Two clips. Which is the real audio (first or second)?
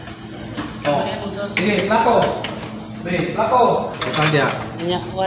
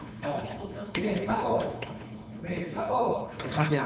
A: first